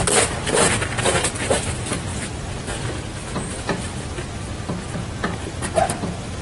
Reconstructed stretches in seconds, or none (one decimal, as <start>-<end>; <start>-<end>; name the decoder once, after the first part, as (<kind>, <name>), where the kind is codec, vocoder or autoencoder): 2.1-3.4 (vocoder, BigVGAN v2)